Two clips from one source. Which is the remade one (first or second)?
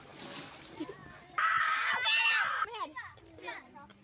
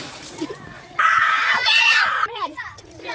second